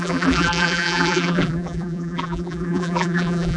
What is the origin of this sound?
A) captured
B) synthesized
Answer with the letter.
B